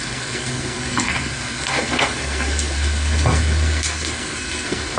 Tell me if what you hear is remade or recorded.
remade